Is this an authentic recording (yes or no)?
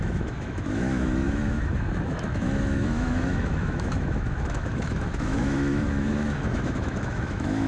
no